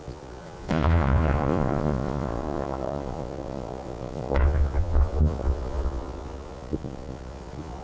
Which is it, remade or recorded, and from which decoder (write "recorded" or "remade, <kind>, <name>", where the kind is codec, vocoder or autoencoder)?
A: remade, vocoder, Vocos